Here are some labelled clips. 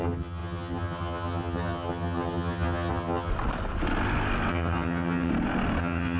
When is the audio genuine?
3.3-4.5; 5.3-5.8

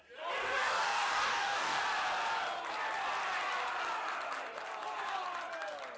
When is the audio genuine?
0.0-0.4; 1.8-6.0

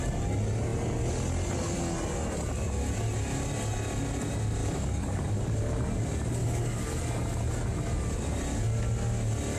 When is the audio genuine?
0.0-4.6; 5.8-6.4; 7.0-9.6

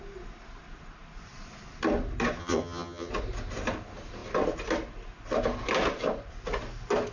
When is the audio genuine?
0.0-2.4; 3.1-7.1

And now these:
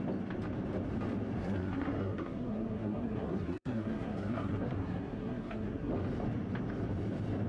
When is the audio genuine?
0.0-1.4; 5.9-7.5